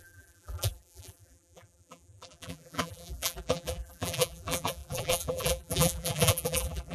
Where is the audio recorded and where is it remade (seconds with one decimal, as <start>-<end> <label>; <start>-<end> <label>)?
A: 0.0-6.9 remade